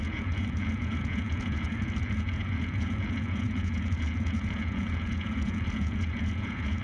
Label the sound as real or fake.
fake